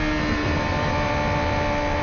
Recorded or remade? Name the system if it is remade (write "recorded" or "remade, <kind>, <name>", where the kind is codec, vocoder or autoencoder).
recorded